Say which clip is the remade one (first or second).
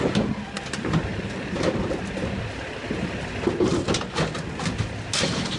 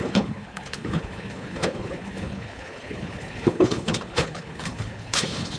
second